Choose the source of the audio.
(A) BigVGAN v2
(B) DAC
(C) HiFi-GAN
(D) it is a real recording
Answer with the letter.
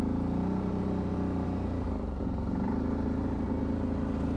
A